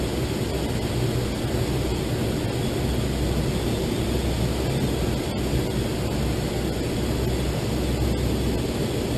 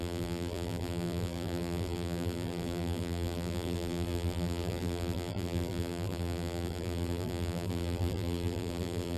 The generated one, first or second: second